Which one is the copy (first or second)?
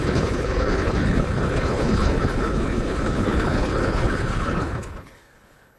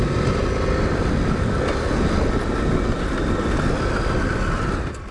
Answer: first